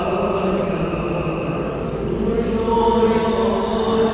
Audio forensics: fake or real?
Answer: real